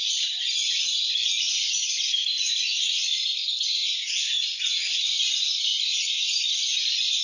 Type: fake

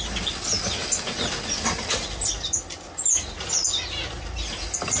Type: real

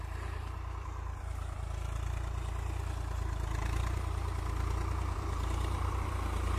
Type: fake